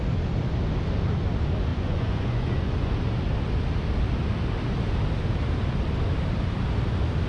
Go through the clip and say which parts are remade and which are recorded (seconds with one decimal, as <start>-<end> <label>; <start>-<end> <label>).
0.0-1.7 recorded; 1.7-2.9 remade; 2.9-7.3 recorded